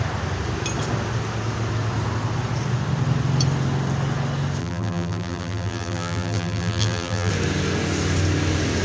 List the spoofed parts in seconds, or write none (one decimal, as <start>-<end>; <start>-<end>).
4.6-7.3